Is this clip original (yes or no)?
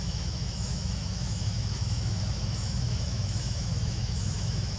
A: no